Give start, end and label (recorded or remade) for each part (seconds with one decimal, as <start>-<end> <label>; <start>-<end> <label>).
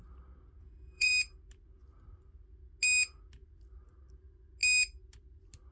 0.0-0.6 recorded; 0.6-1.1 remade; 1.1-5.7 recorded